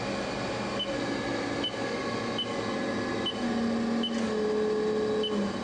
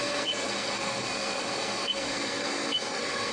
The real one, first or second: first